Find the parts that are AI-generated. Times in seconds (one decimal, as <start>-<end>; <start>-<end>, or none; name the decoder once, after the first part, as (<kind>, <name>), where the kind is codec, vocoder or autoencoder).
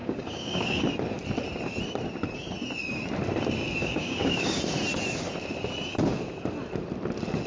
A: 0.0-0.8 (codec, DAC); 3.8-4.6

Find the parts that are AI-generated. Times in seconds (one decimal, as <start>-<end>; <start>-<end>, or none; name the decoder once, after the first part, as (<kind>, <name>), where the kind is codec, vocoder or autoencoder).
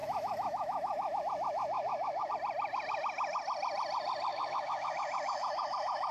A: 0.0-2.3 (autoencoder, DAC-VAE); 4.3-6.1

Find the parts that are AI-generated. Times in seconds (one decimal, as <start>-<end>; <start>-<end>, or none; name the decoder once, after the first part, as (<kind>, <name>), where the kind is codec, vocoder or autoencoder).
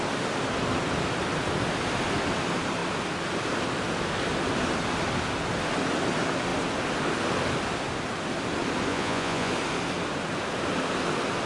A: 8.9-9.5 (vocoder, Vocos)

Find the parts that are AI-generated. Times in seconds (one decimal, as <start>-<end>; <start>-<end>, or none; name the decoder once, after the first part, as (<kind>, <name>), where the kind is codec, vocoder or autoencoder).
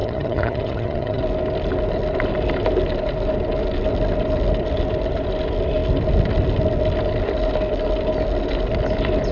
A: 0.0-1.2 (vocoder, HiFi-GAN)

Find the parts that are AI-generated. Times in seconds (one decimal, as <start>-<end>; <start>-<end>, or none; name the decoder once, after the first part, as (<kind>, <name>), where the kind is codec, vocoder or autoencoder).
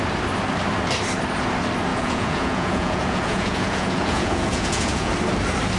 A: 1.9-5.1 (vocoder, Vocos)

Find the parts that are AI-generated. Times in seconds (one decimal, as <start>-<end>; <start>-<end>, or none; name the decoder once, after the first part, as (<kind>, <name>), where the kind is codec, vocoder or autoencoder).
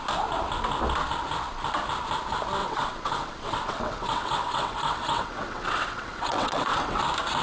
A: 2.6-7.0 (vocoder, WaveNeXt)